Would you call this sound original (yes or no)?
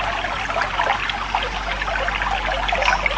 yes